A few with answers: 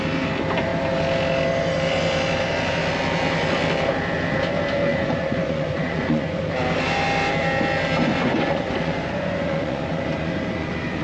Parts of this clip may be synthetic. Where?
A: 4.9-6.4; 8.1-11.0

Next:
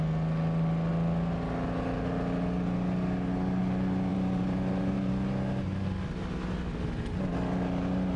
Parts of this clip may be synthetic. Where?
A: 4.1-5.1